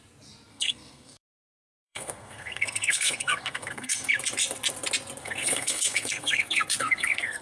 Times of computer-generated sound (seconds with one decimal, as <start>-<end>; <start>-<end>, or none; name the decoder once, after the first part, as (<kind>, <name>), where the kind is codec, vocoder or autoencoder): 0.5-4.1 (codec, SNAC); 5.2-7.4